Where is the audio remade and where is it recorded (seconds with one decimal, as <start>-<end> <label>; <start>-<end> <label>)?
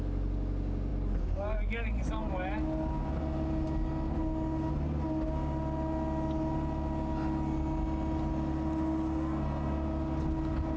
0.0-10.8 recorded